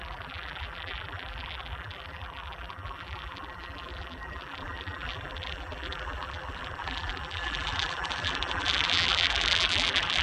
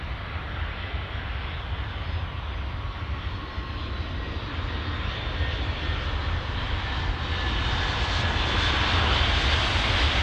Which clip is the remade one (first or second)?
first